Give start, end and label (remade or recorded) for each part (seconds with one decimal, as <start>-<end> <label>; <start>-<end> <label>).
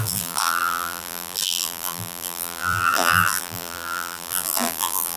0.0-5.2 remade